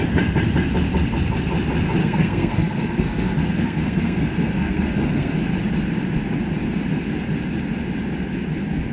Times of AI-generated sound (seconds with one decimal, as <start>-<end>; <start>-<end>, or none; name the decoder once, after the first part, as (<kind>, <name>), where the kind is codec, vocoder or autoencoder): 2.0-5.4 (codec, SNAC)